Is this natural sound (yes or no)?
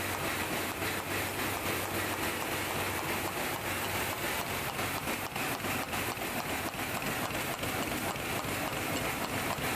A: yes